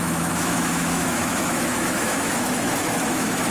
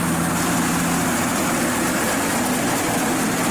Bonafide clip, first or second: second